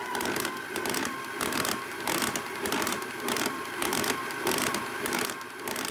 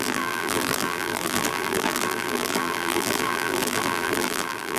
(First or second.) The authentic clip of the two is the first